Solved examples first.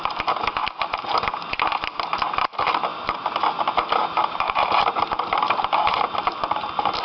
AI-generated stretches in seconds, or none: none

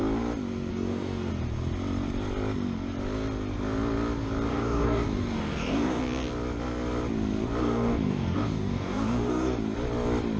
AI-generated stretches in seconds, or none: 0.7-1.3 (codec, DAC); 4.5-6.0; 7.6-9.6

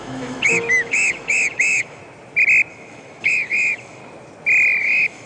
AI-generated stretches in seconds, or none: 0.0-2.0 (autoencoder, DAC-VAE); 2.7-4.0; 4.8-5.3

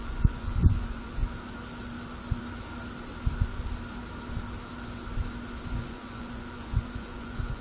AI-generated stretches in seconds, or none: 0.0-1.2 (vocoder, Vocos); 5.7-7.6

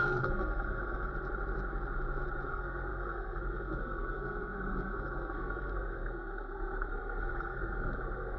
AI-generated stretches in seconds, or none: 0.0-1.1 (codec, SNAC); 2.5-8.4

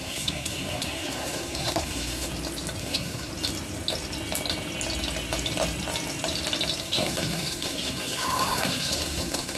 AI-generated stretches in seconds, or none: 0.0-2.3 (codec, SNAC); 2.8-3.3; 6.8-9.6

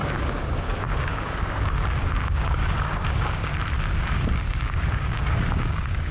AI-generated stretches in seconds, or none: 0.0-3.5 (codec, DAC); 4.0-6.1

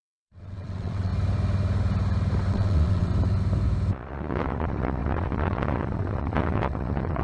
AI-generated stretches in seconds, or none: 0.0-1.1 (vocoder, WaveNeXt); 2.5-3.1; 3.9-7.2